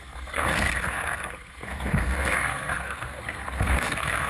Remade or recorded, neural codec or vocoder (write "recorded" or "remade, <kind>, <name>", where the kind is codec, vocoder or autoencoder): remade, codec, SNAC